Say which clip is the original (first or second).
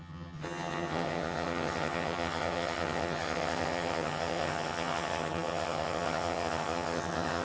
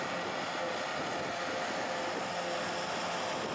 second